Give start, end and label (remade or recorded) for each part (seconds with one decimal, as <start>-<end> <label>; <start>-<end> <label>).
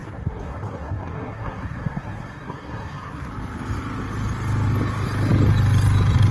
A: 0.0-3.3 remade; 3.3-6.3 recorded